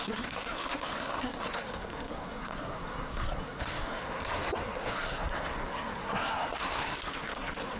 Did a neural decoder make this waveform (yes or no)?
yes